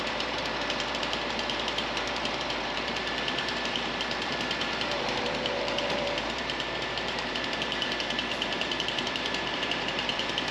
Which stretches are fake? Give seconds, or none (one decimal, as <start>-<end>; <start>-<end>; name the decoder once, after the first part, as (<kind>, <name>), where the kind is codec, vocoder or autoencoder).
0.0-0.4 (vocoder, BigVGAN v2); 1.0-10.5